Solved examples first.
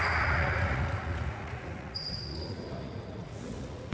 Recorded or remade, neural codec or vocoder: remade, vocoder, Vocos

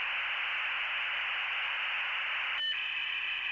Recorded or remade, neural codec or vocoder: remade, vocoder, BigVGAN v2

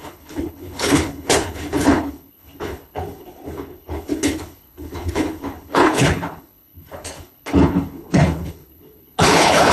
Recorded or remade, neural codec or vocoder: remade, codec, HILCodec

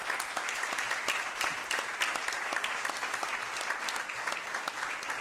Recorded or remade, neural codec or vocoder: recorded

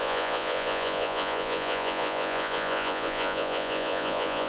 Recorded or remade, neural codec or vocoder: remade, vocoder, Vocos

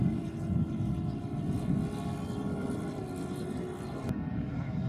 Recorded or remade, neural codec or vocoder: recorded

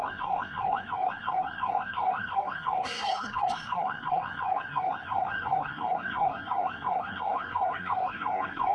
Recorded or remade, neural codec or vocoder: remade, codec, SNAC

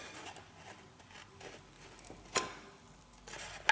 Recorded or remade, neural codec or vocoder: recorded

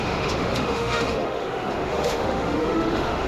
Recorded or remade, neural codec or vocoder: remade, autoencoder, DAC-VAE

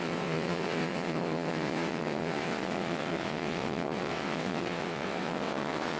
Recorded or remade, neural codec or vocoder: remade, vocoder, WaveNeXt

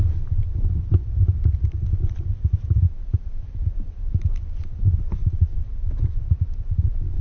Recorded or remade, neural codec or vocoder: remade, vocoder, BigVGAN v2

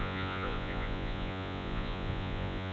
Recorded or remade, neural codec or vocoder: remade, vocoder, Vocos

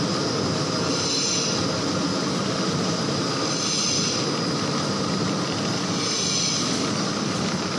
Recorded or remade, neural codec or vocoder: recorded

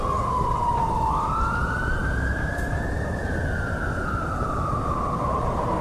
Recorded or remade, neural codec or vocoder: recorded